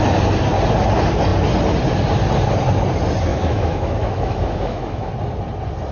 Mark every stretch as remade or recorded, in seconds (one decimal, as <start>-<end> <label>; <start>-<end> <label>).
0.0-3.3 recorded; 3.3-5.1 remade; 5.1-5.9 recorded